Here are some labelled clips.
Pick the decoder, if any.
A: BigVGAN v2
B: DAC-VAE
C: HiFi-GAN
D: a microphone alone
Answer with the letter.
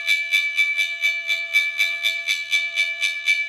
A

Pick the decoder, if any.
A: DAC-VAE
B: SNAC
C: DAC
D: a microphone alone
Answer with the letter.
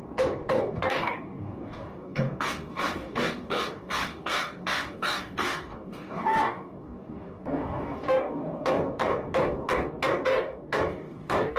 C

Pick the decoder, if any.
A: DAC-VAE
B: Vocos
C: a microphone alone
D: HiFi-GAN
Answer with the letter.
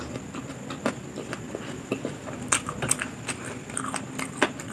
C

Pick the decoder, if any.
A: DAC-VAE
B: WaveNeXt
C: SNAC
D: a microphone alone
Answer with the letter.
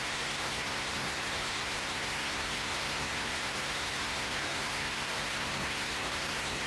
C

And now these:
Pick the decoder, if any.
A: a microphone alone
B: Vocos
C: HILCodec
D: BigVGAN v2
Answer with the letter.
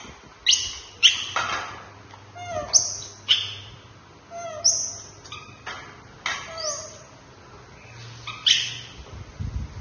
A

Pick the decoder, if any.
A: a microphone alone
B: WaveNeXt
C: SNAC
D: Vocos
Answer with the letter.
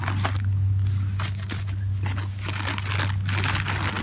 A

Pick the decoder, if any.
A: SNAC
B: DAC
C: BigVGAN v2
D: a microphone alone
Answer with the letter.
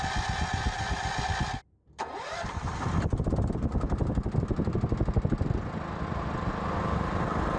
D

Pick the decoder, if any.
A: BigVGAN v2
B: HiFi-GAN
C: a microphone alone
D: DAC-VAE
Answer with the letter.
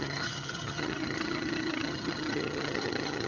B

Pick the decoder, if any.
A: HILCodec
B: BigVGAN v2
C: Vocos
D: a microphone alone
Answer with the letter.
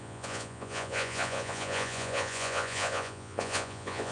C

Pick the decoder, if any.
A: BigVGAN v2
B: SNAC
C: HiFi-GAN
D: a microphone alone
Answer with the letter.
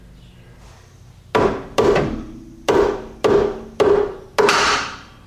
D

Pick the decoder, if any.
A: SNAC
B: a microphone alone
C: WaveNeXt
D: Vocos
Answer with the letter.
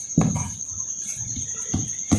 B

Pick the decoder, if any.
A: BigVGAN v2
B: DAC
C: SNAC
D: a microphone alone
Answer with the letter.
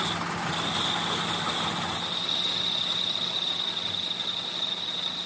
D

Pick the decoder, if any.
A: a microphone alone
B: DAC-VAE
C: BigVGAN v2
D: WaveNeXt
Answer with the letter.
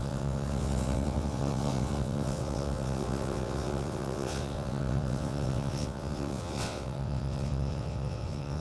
D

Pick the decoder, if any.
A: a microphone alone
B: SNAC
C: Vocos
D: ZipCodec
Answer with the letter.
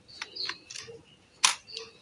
A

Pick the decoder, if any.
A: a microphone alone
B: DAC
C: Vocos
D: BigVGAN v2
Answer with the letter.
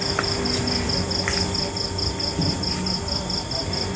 A